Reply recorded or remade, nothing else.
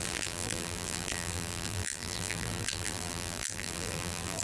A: remade